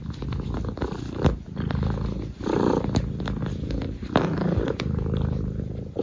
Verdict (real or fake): real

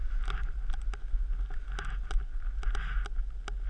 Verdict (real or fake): real